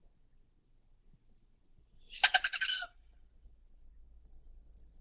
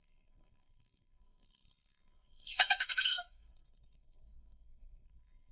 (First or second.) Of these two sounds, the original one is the first